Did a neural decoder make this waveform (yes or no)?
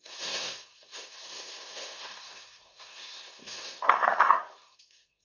yes